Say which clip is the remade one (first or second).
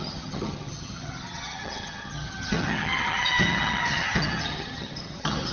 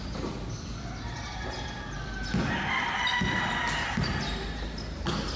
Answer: first